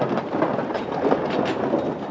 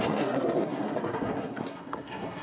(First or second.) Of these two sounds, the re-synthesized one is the second